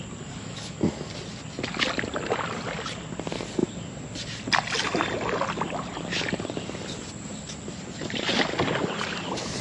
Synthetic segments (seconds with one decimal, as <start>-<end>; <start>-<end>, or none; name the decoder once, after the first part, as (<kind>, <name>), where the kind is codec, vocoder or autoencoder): 0.4-1.1 (autoencoder, DAC-VAE)